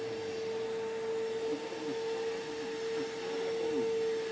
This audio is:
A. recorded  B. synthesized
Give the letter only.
A